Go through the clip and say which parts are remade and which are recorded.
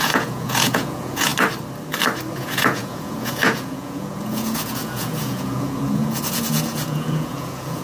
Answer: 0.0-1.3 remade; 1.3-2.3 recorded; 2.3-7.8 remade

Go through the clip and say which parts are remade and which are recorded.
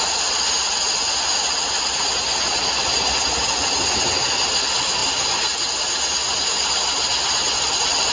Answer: 0.0-8.1 recorded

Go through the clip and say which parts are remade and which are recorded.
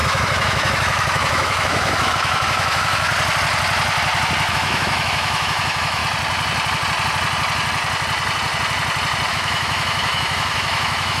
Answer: 0.0-3.1 remade; 3.1-4.5 recorded; 4.5-6.0 remade; 6.0-9.3 recorded; 9.3-11.2 remade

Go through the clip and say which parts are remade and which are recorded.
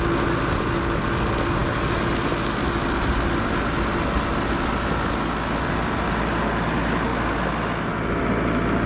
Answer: 0.0-8.9 recorded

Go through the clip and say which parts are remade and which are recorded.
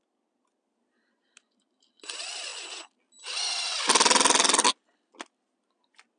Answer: 0.0-6.2 recorded